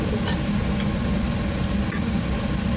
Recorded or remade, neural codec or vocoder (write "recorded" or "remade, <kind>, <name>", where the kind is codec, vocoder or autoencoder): recorded